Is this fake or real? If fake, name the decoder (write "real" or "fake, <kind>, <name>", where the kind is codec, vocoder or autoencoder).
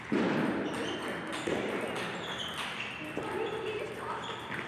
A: real